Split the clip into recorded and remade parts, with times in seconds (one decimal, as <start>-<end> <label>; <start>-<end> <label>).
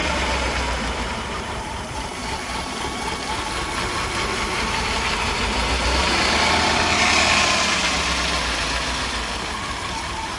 0.0-2.8 remade; 2.8-4.5 recorded; 4.5-9.1 remade; 9.1-10.4 recorded